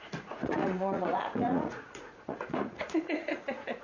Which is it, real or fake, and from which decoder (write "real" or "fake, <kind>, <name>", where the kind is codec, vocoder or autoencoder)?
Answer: fake, vocoder, Vocos